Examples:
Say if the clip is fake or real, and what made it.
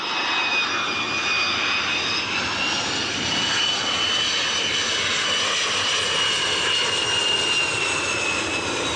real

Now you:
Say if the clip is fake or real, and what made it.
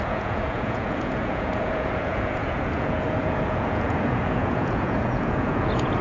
fake, vocoder, Vocos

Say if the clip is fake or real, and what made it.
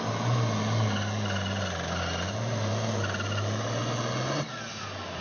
real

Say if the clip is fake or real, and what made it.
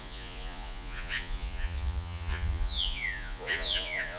fake, vocoder, Vocos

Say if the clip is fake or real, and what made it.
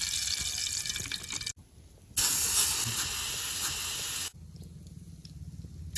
real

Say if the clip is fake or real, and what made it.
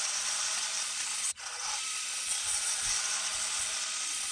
fake, vocoder, Vocos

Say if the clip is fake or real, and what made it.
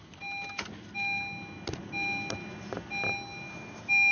real